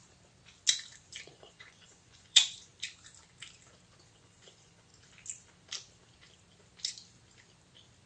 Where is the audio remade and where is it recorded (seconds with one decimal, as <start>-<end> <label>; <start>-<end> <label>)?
0.0-1.2 recorded; 1.2-2.7 remade; 2.7-4.0 recorded; 4.0-4.9 remade; 4.9-8.1 recorded